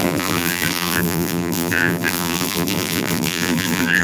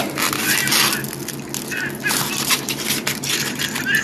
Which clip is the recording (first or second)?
second